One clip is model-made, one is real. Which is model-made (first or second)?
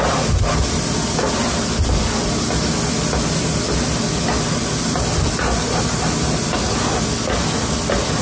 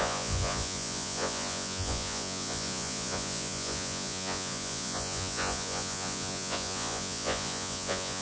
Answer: second